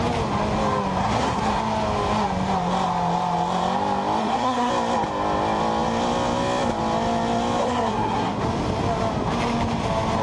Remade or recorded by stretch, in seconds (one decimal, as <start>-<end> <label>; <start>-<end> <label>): 0.0-1.0 recorded; 1.0-1.6 remade; 1.6-4.2 recorded; 4.2-4.7 remade; 4.7-7.6 recorded; 7.6-8.4 remade; 8.4-10.2 recorded